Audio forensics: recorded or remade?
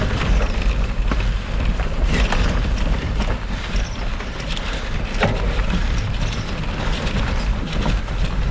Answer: remade